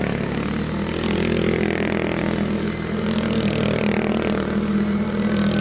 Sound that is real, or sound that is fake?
real